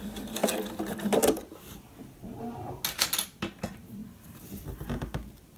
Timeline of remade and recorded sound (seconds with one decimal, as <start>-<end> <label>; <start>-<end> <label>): 0.0-5.6 recorded